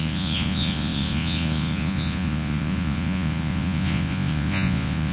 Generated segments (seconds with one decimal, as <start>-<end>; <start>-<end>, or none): 0.0-5.1